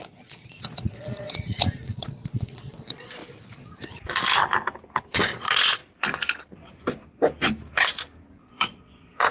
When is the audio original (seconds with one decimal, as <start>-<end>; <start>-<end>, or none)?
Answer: 3.2-5.0; 5.8-8.5